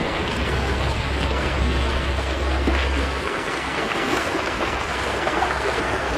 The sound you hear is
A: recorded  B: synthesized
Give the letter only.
B